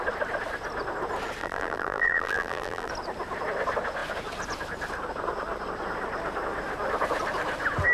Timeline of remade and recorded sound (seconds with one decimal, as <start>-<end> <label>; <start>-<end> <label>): 0.0-1.4 recorded; 1.4-2.9 remade; 2.9-7.9 recorded